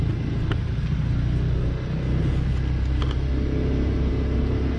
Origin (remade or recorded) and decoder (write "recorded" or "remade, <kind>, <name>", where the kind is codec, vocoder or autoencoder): recorded